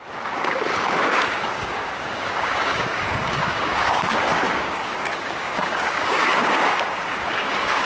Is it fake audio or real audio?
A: fake